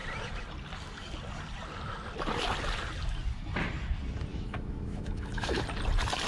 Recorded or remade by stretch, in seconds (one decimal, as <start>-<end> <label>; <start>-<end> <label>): 0.0-4.3 recorded; 4.3-5.6 remade; 5.6-6.3 recorded